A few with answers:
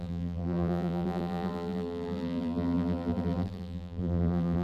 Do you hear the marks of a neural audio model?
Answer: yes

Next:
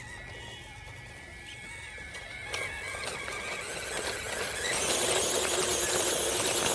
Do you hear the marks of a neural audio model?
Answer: no